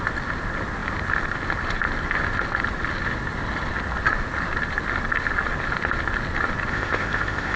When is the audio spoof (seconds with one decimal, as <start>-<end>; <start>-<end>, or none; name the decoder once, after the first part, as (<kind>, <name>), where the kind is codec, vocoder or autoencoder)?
6.7-7.6 (codec, ZipCodec)